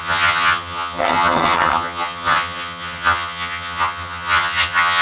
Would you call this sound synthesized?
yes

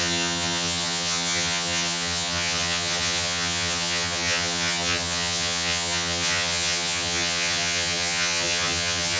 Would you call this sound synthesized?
yes